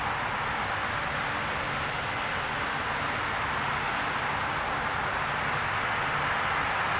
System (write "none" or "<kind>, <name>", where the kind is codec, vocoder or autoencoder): none